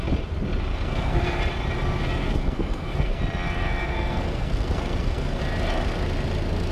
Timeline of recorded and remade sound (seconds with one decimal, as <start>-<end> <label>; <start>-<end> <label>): 0.0-0.7 recorded; 0.7-1.4 remade; 1.4-2.2 recorded; 2.2-3.2 remade; 3.2-3.8 recorded; 3.8-5.4 remade; 5.4-6.7 recorded